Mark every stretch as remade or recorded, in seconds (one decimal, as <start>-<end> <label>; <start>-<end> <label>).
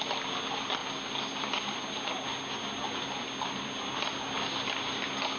0.0-5.4 recorded